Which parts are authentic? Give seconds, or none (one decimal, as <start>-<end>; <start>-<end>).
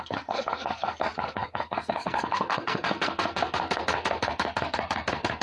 none